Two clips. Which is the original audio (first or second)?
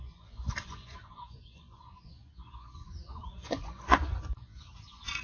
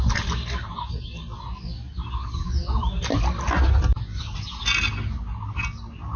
second